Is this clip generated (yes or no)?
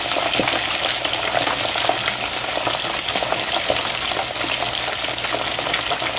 no